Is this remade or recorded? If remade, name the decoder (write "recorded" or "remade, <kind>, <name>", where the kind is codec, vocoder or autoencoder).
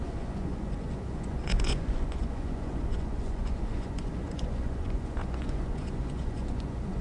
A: remade, vocoder, Vocos